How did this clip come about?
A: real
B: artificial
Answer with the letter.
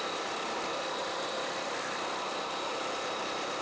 A